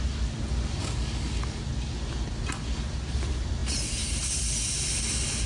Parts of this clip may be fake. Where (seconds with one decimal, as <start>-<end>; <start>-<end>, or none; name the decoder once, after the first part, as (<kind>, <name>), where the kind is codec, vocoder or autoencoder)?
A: 0.8-1.4 (codec, DAC)